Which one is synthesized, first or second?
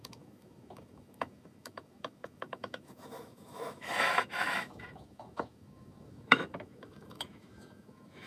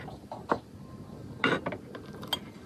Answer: first